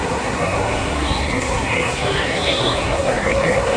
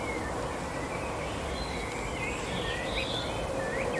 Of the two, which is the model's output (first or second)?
first